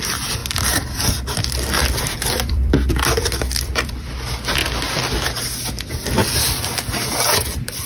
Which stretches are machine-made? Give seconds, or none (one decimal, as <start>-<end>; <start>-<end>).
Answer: 0.0-0.4; 2.5-4.6; 6.6-7.9